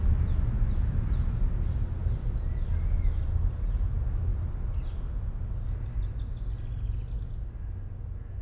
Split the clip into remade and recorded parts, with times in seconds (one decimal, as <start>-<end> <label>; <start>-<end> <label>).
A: 0.0-8.4 recorded